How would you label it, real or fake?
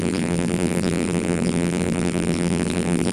fake